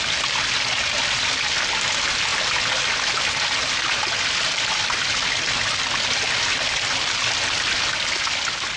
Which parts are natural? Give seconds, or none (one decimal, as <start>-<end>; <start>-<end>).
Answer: 0.0-8.8

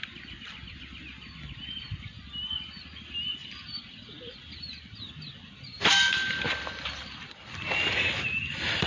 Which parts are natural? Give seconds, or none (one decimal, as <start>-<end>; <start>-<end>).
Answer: 0.0-3.4; 7.7-8.9

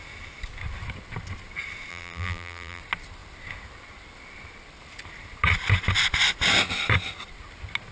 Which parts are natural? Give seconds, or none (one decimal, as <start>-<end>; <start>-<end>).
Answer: 0.0-1.9; 2.8-7.9